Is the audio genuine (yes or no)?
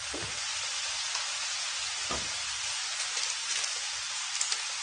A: yes